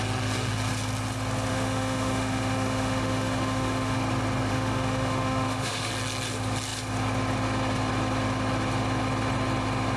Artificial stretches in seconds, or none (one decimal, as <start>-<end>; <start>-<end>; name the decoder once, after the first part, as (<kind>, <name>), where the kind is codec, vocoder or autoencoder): 1.5-4.0 (autoencoder, DAC-VAE); 4.5-5.9